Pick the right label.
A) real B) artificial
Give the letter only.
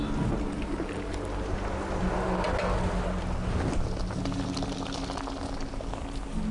A